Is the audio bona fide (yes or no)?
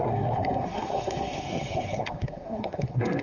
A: no